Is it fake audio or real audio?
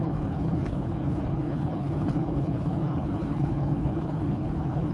fake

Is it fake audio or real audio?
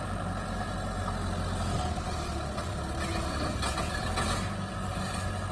real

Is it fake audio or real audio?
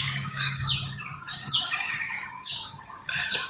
fake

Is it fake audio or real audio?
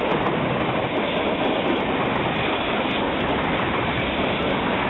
real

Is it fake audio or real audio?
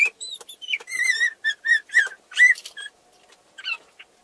real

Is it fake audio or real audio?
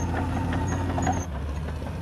real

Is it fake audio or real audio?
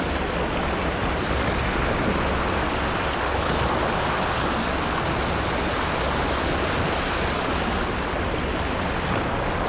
real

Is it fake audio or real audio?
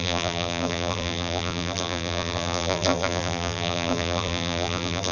fake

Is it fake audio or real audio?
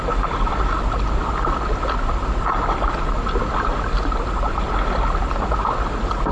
real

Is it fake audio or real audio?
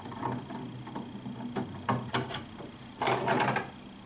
real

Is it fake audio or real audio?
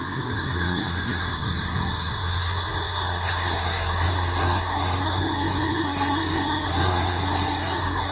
fake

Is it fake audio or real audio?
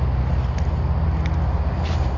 real